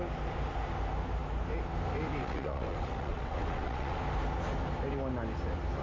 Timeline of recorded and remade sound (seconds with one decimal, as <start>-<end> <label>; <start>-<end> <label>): 0.0-2.2 recorded; 2.2-4.0 remade; 4.0-5.8 recorded